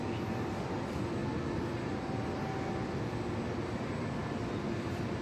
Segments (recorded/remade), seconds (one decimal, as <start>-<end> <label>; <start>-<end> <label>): 0.0-5.2 recorded